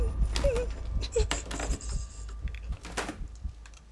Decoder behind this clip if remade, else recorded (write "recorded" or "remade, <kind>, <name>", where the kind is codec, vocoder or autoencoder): recorded